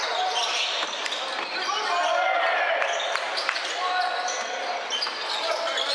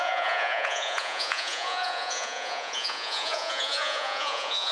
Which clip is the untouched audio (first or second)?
first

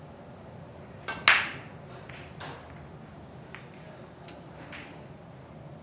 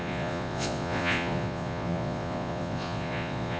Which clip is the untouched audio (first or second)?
first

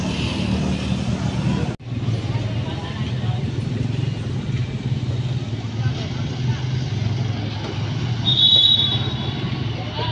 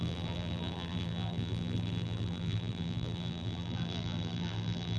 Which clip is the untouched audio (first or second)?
first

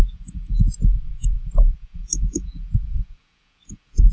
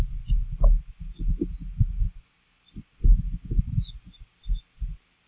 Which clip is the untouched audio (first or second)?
second